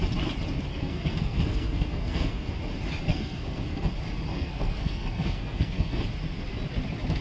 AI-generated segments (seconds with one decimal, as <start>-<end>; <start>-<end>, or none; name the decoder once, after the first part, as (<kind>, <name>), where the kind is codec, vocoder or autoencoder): 0.7-2.5 (codec, SNAC); 3.1-3.9; 4.3-6.0